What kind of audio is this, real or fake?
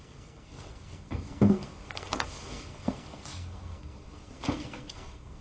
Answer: fake